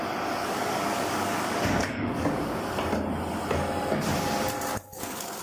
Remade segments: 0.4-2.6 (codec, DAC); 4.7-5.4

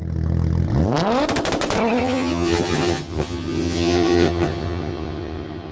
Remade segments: 2.0-5.7 (vocoder, HiFi-GAN)

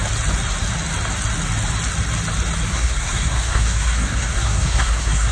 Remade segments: 2.7-5.3 (codec, SNAC)

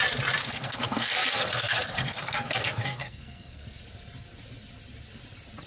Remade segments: 0.4-3.8 (codec, SNAC)

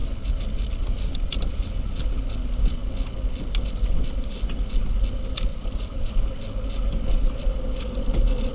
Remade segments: 5.5-6.1 (vocoder, BigVGAN v2)

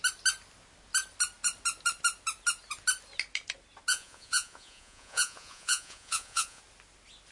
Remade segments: 3.9-6.6 (vocoder, Vocos)

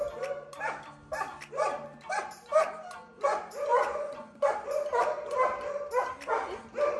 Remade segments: 3.7-4.5 (vocoder, Vocos)